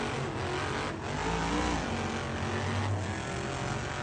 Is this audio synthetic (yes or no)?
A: no